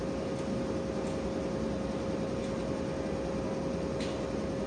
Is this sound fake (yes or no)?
no